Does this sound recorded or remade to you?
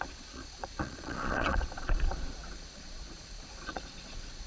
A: remade